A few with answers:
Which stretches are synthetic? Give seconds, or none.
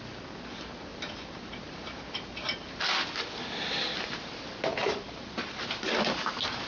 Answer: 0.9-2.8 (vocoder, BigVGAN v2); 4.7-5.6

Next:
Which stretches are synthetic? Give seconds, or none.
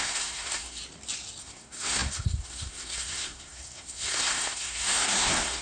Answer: 0.0-0.8 (codec, SNAC); 1.4-5.6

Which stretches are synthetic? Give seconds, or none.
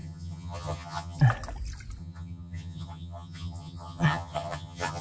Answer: 0.0-1.2 (vocoder, HiFi-GAN); 2.0-5.0